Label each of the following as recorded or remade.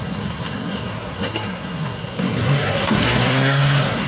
remade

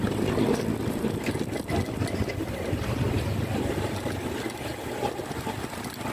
recorded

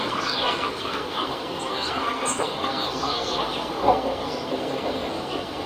remade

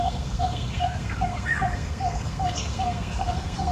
remade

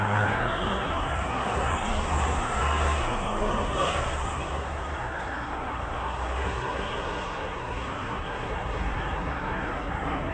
remade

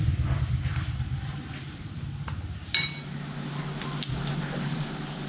recorded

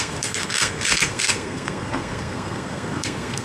remade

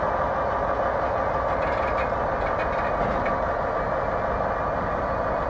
recorded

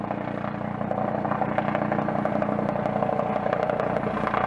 recorded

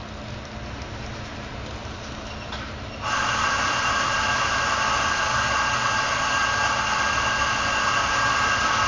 recorded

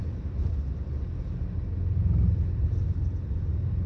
recorded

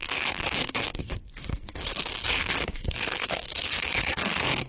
remade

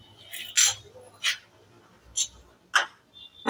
recorded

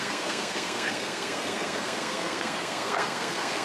remade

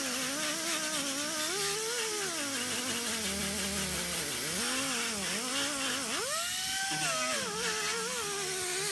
recorded